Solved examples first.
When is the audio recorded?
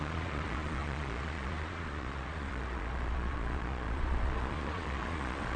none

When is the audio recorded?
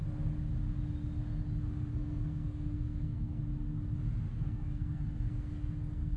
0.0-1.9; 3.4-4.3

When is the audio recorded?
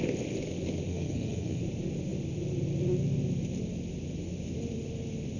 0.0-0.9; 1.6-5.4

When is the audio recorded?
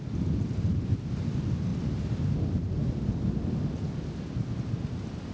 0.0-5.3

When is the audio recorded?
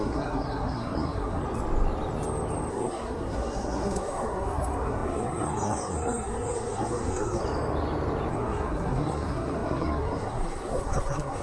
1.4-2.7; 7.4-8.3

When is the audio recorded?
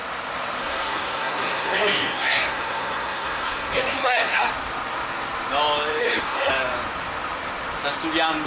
0.0-0.6; 4.5-6.0; 6.5-8.5